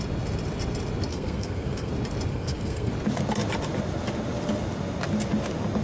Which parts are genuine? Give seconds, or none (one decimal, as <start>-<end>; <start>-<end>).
0.0-1.1; 1.9-2.3; 2.9-5.8